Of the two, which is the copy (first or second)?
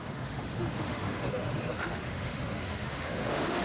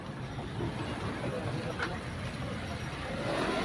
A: first